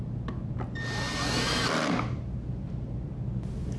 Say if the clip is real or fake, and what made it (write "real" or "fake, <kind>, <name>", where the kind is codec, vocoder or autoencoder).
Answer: real